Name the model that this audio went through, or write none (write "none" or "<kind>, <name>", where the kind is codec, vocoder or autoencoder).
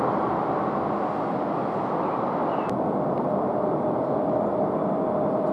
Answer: none